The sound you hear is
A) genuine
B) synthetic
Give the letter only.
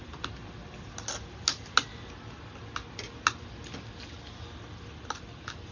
A